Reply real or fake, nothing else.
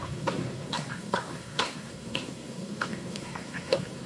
fake